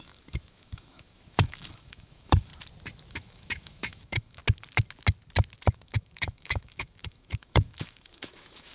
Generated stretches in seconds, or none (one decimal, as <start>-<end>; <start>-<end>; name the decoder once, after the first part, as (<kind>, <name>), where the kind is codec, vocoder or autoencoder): 0.0-2.5 (autoencoder, DAC-VAE); 3.1-4.4; 5.7-8.7